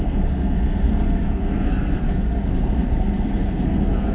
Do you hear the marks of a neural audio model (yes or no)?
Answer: yes